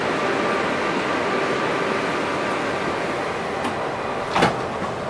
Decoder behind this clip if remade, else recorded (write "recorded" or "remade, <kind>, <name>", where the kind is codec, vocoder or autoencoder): recorded